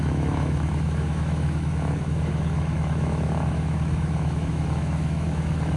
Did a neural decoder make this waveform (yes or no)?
yes